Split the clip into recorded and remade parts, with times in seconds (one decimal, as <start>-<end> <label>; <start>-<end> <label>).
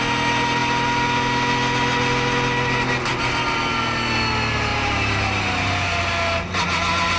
0.0-4.7 recorded; 4.7-6.0 remade; 6.0-7.2 recorded